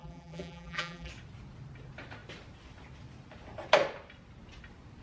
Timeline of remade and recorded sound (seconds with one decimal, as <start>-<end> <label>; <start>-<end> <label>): 0.0-1.1 remade; 1.1-5.0 recorded